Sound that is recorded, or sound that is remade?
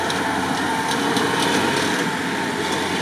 recorded